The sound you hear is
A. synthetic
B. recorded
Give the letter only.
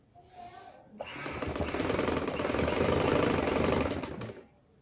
B